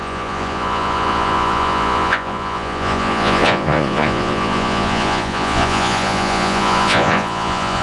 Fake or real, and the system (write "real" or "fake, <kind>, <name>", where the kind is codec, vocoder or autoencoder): fake, vocoder, Vocos